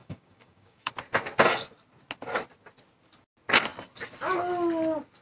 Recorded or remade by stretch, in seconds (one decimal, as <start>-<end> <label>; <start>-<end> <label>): 0.0-0.9 remade; 0.9-5.2 recorded